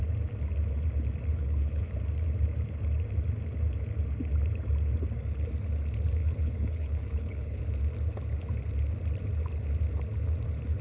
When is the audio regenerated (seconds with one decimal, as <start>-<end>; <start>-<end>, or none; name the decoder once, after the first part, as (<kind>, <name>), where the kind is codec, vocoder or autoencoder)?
1.3-1.9 (codec, HILCodec); 6.2-7.6